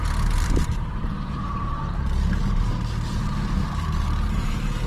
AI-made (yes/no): yes